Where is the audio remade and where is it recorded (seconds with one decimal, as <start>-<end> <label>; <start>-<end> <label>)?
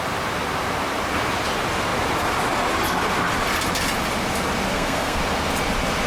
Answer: 0.0-4.7 recorded; 4.7-5.2 remade; 5.2-6.1 recorded